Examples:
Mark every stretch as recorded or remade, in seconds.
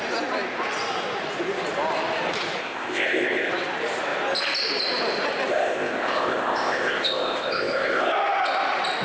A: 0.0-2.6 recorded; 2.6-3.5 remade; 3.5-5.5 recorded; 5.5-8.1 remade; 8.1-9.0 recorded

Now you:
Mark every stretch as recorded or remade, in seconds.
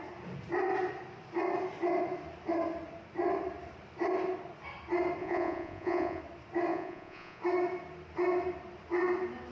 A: 0.0-5.2 recorded; 5.2-6.2 remade; 6.2-6.7 recorded; 6.7-7.4 remade; 7.4-9.5 recorded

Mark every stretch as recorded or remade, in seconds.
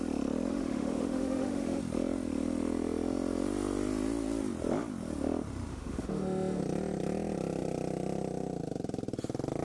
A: 0.0-0.5 recorded; 0.5-1.8 remade; 1.8-5.7 recorded; 5.7-6.6 remade; 6.6-9.6 recorded